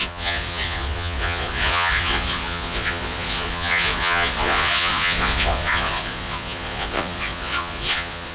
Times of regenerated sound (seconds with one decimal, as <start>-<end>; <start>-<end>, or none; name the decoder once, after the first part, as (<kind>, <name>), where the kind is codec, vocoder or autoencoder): 0.0-8.3 (vocoder, Vocos)